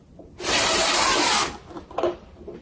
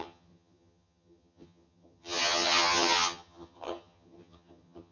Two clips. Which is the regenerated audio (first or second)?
second